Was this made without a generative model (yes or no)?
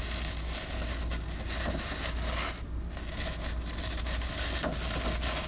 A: yes